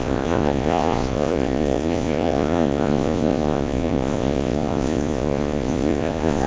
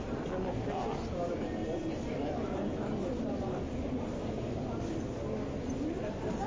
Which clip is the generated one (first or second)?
first